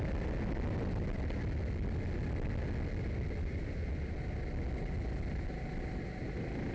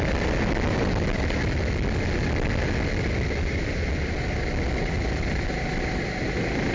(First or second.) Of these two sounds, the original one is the first